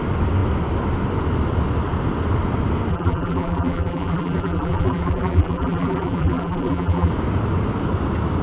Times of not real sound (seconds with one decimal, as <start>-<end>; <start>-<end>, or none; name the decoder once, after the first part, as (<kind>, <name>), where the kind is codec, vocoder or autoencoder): 2.9-7.1 (vocoder, BigVGAN v2)